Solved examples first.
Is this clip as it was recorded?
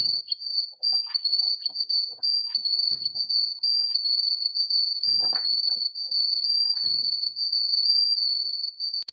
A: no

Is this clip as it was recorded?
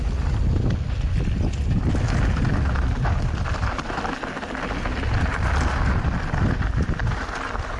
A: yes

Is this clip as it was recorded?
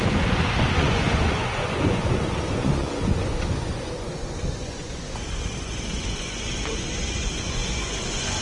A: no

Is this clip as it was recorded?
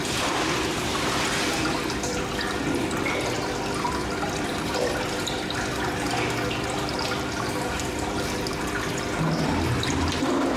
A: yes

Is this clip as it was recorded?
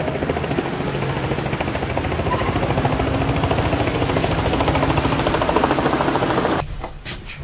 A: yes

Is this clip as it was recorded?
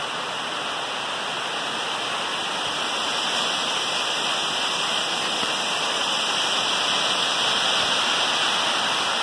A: yes